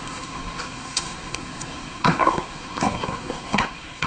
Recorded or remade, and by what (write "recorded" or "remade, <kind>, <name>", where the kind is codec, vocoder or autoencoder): remade, codec, SNAC